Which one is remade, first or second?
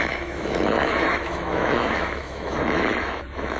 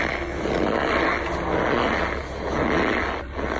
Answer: first